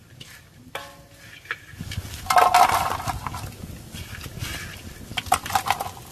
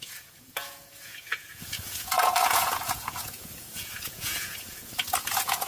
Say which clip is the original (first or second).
first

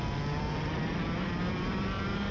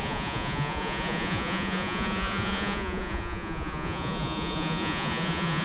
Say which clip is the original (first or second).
first